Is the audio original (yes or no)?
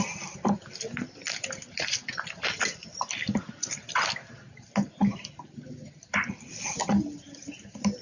yes